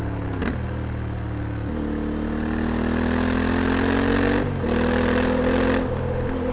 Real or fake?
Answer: real